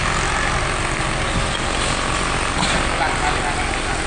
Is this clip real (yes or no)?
yes